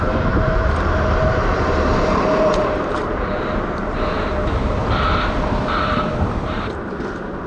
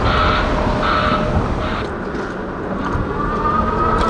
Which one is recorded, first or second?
second